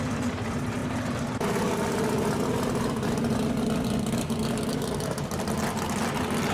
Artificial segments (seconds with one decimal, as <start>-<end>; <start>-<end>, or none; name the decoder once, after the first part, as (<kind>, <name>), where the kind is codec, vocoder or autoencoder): none